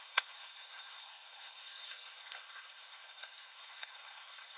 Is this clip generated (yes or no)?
yes